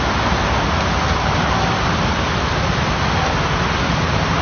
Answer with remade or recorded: recorded